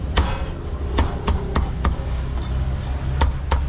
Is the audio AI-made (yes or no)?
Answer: no